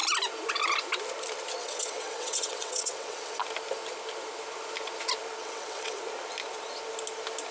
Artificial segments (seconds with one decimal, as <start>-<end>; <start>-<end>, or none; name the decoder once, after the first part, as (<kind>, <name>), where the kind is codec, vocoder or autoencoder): 1.6-3.4 (vocoder, WaveNeXt); 5.4-6.0